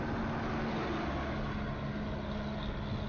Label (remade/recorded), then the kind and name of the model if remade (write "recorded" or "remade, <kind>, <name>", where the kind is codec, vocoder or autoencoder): recorded